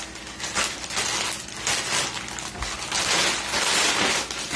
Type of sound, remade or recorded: recorded